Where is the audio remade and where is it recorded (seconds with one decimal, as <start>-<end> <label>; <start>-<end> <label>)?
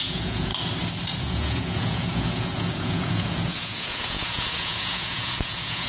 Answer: 0.0-0.5 remade; 0.5-1.2 recorded; 1.2-5.9 remade